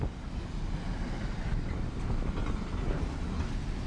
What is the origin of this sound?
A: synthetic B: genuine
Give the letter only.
B